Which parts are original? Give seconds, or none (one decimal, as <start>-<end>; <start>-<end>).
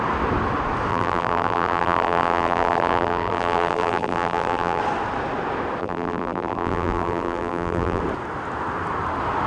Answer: 0.0-0.9; 4.8-5.8; 8.0-9.5